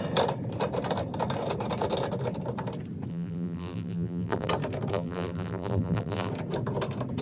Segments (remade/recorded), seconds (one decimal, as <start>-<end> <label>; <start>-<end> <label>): 0.0-3.1 recorded; 3.1-4.5 remade; 4.5-4.9 recorded; 4.9-6.3 remade; 6.3-7.2 recorded